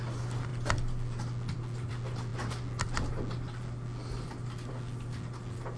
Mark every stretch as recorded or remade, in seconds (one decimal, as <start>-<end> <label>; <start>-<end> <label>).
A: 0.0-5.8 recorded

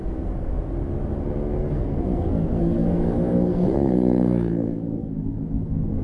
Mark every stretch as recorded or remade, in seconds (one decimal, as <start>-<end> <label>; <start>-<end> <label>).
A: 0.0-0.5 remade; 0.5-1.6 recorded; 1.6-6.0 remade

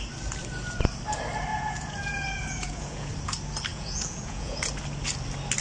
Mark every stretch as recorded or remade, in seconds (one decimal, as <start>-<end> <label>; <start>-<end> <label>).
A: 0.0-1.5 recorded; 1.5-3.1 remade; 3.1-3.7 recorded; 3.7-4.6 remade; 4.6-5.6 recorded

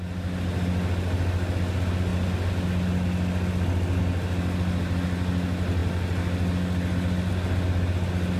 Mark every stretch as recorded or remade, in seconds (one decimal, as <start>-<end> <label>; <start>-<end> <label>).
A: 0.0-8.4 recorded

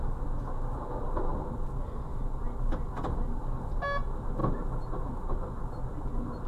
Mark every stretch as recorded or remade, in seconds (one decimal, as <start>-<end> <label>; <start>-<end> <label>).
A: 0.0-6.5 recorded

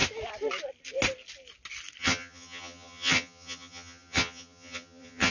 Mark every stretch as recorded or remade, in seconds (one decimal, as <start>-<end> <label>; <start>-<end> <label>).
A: 0.0-2.0 recorded; 2.0-5.3 remade

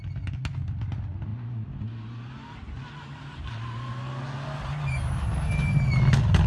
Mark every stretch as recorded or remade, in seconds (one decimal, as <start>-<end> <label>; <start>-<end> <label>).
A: 0.0-6.5 recorded

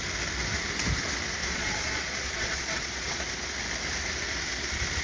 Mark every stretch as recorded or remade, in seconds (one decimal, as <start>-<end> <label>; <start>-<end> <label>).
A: 0.0-1.4 recorded; 1.4-3.2 remade; 3.2-5.0 recorded